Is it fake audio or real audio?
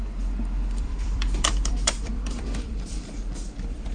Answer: fake